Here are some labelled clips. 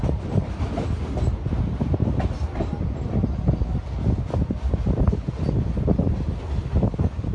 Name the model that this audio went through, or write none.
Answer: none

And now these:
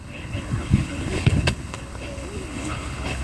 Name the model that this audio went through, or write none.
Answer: codec, HILCodec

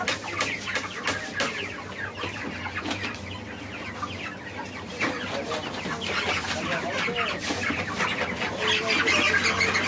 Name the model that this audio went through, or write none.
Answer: none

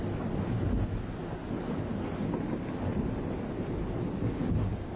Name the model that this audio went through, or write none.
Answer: none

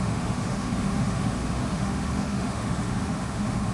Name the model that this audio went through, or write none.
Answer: autoencoder, DAC-VAE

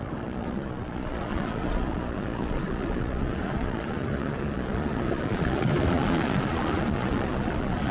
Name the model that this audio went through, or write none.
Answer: vocoder, Vocos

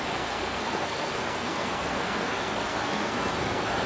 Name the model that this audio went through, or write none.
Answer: codec, SNAC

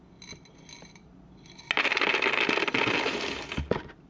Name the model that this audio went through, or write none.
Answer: none